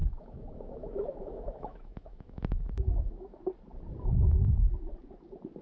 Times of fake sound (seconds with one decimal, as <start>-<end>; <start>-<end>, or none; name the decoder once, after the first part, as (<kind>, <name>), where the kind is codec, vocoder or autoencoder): 0.0-3.4 (autoencoder, DAC-VAE)